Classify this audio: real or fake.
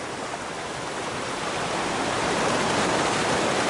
real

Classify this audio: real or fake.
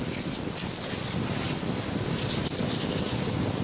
real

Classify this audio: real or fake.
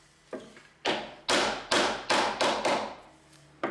real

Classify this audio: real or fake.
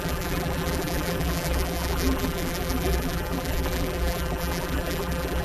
fake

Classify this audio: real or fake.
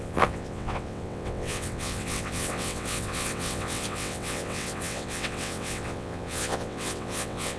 fake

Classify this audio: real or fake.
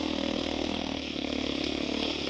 fake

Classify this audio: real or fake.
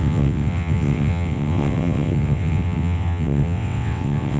fake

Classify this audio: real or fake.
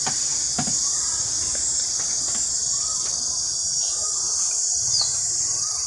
real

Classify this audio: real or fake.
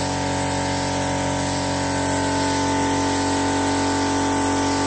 real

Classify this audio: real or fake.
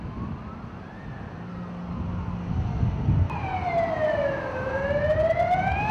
real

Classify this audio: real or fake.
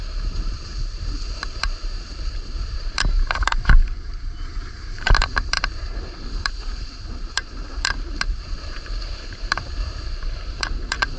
fake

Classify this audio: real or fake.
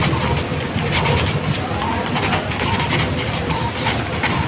real